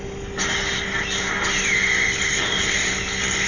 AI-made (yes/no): no